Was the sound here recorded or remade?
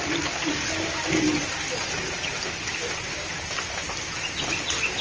recorded